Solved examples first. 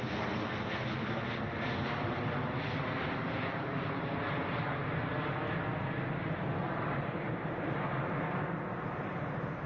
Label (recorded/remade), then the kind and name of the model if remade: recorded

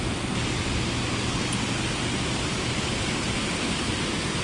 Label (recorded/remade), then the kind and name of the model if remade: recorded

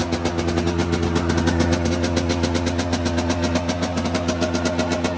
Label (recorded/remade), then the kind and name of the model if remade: recorded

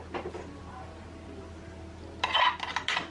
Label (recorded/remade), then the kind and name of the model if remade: recorded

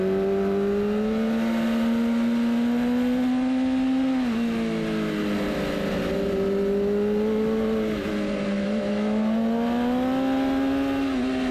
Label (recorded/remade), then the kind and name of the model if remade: recorded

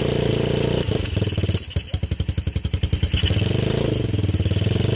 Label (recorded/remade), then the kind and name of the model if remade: recorded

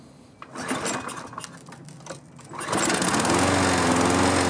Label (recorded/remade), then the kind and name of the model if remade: recorded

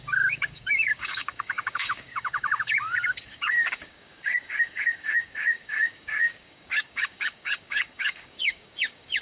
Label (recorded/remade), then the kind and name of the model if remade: remade, codec, DAC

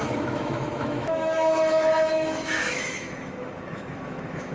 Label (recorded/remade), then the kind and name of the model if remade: remade, autoencoder, DAC-VAE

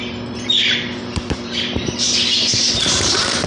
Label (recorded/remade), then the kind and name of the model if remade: remade, vocoder, BigVGAN v2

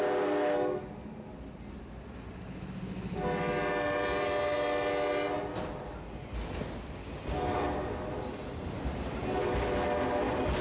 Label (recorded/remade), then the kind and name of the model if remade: recorded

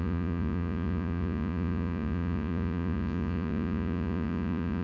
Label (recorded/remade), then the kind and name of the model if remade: remade, vocoder, Vocos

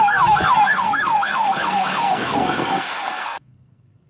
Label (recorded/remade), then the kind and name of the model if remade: remade, codec, SNAC